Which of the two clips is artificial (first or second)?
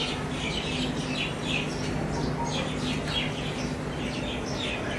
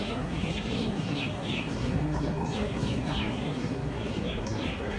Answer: second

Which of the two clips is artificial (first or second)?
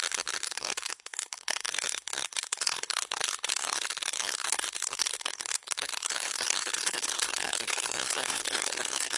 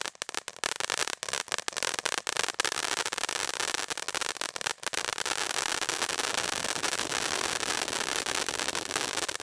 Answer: first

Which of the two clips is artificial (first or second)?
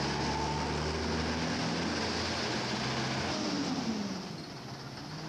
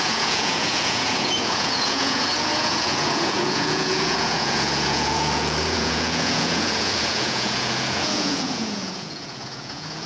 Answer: second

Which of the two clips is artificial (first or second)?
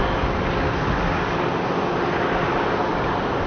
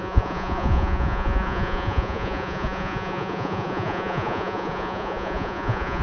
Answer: second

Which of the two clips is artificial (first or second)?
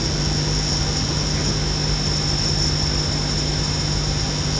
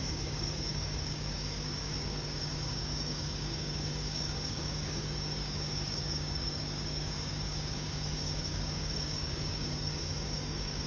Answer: second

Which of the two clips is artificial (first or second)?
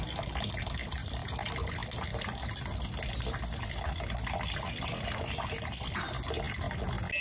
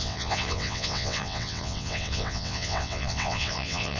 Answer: second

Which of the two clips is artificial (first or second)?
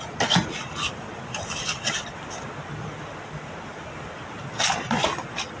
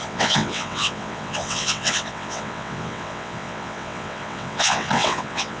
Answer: second